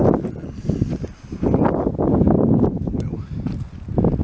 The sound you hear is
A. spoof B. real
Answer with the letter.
B